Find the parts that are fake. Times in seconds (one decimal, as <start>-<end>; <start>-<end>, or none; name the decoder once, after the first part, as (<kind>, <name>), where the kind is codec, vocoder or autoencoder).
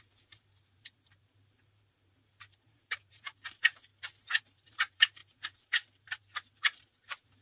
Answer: 0.0-3.9 (vocoder, BigVGAN v2); 4.4-7.4